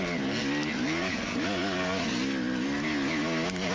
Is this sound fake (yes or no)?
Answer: no